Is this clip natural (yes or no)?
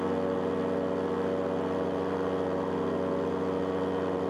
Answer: yes